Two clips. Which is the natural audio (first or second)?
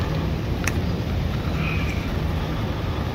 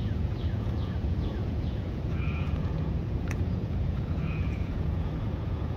first